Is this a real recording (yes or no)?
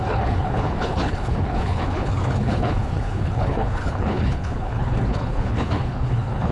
no